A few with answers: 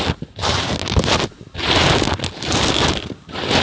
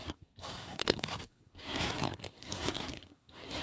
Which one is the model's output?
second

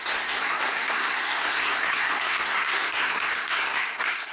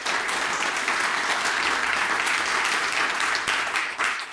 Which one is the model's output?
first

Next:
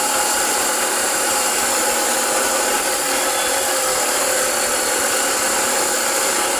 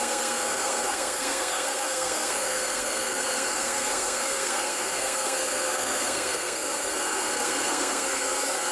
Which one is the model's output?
second